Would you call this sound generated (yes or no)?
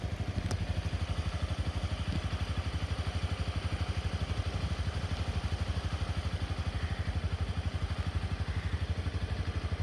no